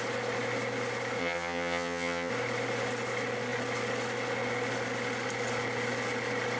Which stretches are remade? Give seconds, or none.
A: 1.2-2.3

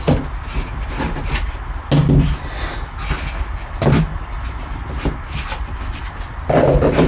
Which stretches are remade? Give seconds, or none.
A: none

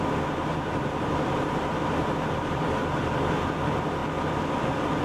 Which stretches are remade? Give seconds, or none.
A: 0.5-2.8

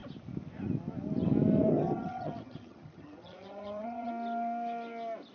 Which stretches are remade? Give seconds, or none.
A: 1.7-4.1

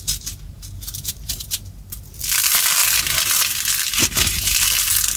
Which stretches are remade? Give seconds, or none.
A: 0.0-2.8; 4.4-5.2

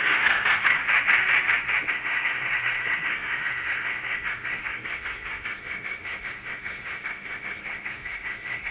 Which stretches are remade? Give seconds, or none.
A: 0.0-0.8; 1.9-8.7

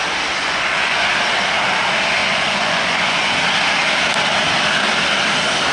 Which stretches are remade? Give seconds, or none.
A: 0.4-1.1; 2.2-3.4